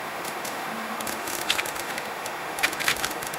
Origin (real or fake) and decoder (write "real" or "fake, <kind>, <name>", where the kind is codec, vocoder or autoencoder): fake, autoencoder, DAC-VAE